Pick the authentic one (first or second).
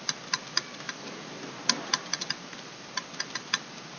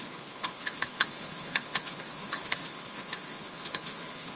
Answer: first